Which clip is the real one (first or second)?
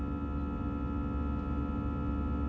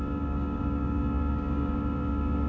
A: first